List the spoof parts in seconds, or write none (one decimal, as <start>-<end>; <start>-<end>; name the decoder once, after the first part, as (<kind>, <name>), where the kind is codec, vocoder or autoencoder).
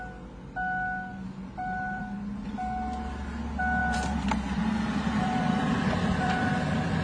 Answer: 1.1-2.0 (vocoder, BigVGAN v2); 3.8-6.5